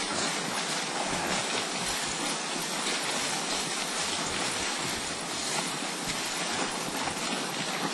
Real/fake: real